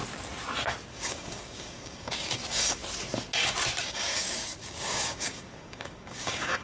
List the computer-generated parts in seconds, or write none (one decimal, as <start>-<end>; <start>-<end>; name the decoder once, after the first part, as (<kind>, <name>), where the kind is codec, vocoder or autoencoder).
0.9-2.8 (codec, DAC); 3.8-6.6